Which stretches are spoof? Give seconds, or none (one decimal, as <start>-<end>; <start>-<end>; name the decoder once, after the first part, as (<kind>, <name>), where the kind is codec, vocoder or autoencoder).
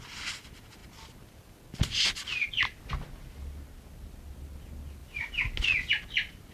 none